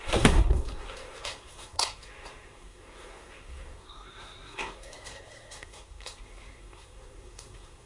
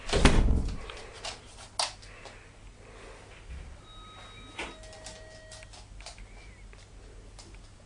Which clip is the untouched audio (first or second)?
second